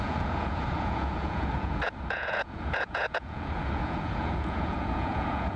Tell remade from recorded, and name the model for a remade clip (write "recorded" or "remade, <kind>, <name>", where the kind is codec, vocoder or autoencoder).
remade, vocoder, Vocos